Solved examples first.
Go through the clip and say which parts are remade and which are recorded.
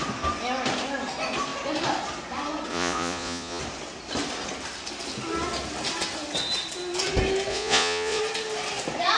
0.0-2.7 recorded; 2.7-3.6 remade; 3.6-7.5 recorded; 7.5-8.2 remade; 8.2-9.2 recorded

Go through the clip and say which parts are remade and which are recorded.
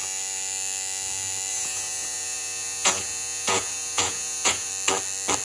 0.0-1.5 recorded; 1.5-4.7 remade; 4.7-5.4 recorded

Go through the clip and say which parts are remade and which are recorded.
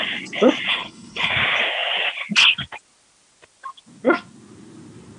0.0-0.7 recorded; 0.7-1.3 remade; 1.3-5.2 recorded